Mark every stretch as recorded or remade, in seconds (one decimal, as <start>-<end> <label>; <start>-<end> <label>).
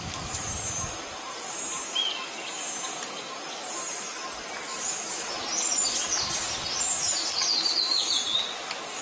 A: 0.0-4.7 recorded; 4.7-5.2 remade; 5.2-9.0 recorded